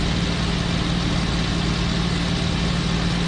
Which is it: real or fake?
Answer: real